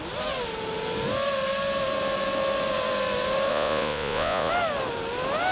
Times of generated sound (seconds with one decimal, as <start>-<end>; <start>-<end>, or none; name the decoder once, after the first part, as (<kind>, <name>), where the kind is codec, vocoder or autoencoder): 3.5-4.5 (vocoder, Vocos)